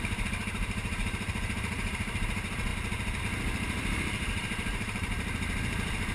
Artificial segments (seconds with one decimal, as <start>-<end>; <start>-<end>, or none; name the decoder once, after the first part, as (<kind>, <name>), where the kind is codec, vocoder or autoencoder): 0.0-2.7 (vocoder, BigVGAN v2); 3.2-6.1